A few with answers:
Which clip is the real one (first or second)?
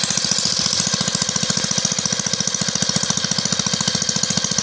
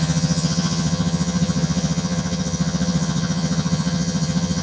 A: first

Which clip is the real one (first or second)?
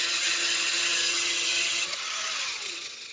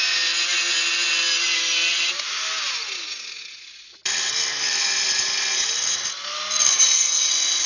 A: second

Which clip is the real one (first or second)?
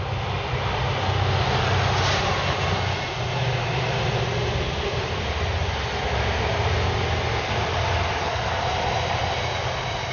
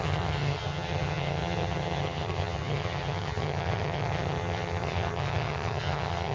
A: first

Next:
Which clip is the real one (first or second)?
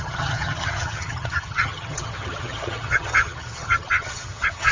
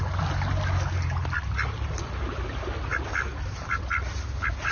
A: second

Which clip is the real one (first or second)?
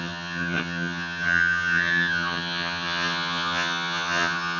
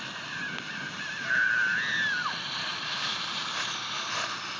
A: second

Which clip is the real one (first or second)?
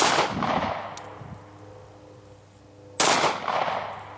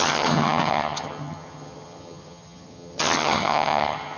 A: first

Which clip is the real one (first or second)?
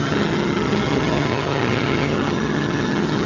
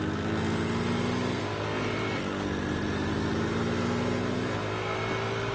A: second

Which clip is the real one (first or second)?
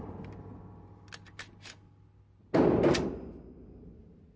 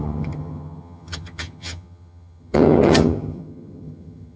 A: first